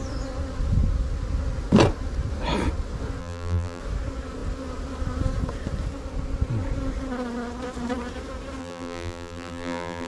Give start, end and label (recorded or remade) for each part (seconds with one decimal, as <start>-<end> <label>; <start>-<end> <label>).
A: 0.0-3.2 recorded; 3.2-3.8 remade; 3.8-8.6 recorded; 8.6-10.1 remade